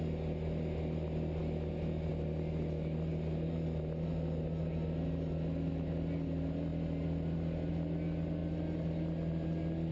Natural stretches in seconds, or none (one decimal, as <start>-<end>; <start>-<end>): 0.0-9.9